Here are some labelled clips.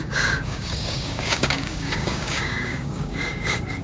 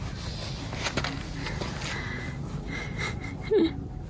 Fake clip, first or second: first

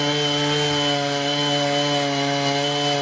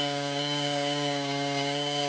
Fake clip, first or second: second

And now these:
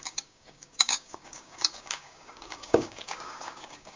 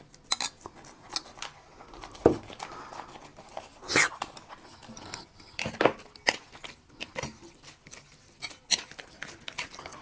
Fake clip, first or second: first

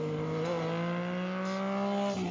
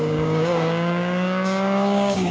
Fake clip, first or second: second